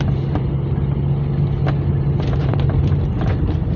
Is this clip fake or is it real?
real